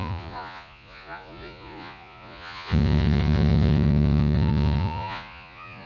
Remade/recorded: remade